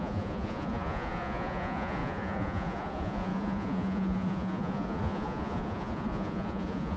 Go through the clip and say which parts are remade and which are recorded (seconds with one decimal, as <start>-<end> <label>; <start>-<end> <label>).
0.0-7.0 remade